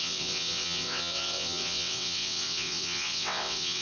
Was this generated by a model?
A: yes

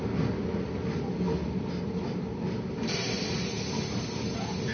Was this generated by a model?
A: no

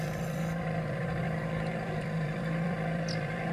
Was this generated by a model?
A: yes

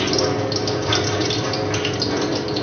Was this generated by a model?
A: no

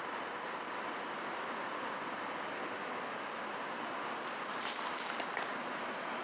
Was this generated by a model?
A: no